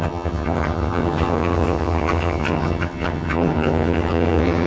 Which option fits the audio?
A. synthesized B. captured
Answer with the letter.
A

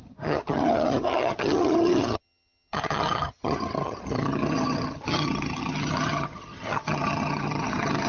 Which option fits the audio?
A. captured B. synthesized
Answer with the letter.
B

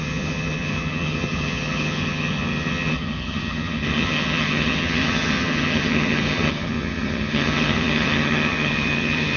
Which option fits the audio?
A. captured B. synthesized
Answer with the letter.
B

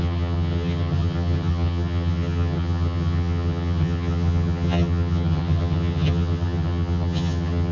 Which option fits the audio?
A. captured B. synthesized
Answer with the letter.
B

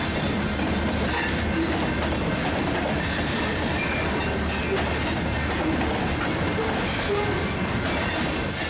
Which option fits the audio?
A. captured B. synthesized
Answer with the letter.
A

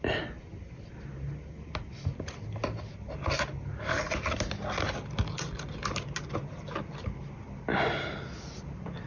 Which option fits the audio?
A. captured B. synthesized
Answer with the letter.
A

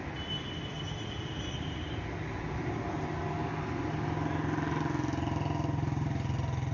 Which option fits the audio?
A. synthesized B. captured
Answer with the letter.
B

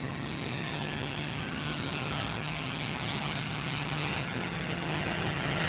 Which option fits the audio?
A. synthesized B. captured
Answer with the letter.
A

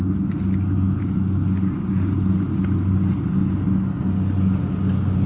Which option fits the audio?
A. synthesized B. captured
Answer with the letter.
B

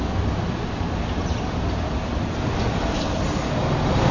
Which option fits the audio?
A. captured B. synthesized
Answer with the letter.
A